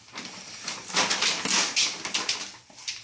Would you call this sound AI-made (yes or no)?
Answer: no